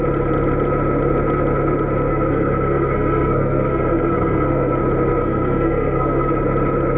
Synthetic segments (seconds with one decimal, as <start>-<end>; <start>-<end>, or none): 2.1-4.8; 5.2-6.3